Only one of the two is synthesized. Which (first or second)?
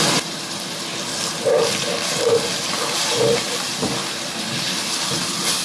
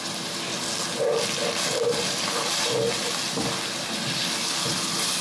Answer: first